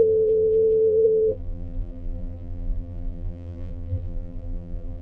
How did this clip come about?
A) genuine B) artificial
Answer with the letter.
B